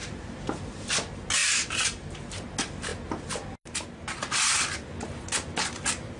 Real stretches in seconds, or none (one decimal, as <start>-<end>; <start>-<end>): 0.9-1.4; 2.1-6.2